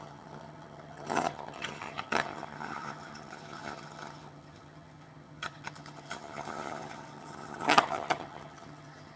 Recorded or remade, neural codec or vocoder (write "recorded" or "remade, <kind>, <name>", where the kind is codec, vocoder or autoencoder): remade, vocoder, HiFi-GAN